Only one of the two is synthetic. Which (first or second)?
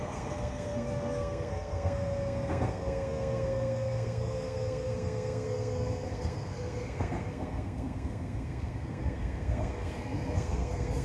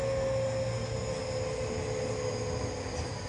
first